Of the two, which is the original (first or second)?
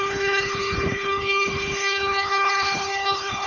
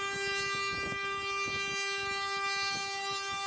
second